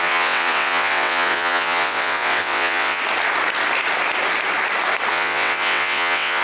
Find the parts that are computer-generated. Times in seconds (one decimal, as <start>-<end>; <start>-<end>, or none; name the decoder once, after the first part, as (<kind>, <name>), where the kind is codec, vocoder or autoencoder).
0.0-3.0 (vocoder, WaveNeXt); 5.1-6.4